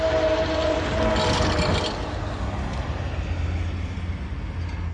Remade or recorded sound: recorded